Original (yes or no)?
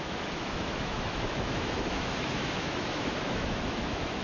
no